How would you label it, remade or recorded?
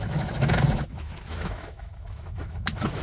remade